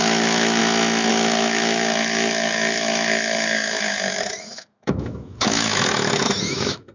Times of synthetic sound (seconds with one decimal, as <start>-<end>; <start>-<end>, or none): 0.0-0.6; 1.1-6.9